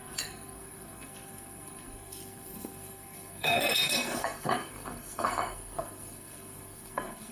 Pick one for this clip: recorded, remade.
remade